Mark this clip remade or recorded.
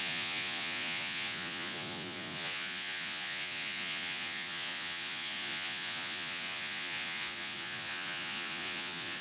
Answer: remade